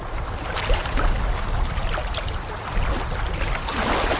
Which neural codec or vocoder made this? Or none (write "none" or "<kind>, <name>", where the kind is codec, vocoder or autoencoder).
none